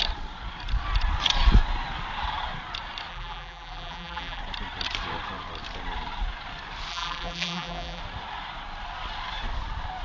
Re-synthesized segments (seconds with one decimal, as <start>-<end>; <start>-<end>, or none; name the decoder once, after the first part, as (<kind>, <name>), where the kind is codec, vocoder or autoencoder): 3.1-4.4 (vocoder, BigVGAN v2); 6.9-8.0